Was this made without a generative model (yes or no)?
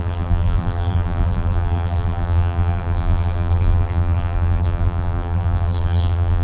no